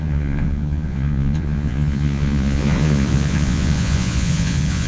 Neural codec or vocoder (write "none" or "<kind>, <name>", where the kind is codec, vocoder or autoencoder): vocoder, Vocos